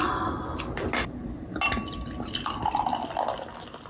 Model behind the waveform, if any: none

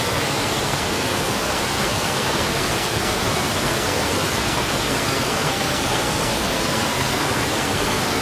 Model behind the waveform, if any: codec, SNAC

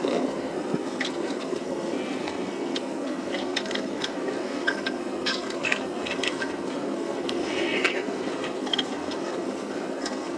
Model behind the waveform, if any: codec, SNAC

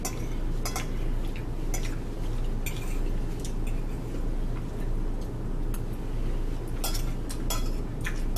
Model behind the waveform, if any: none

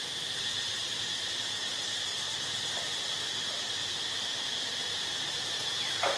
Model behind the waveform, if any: none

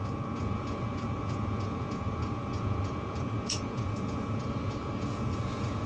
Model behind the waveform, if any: vocoder, Vocos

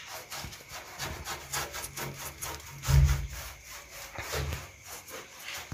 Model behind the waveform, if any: none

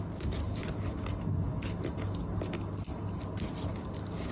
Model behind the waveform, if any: none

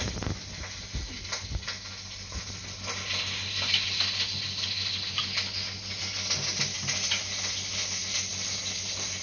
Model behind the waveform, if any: none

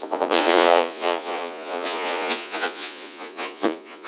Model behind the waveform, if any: vocoder, Vocos